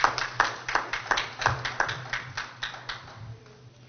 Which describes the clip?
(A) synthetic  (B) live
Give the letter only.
B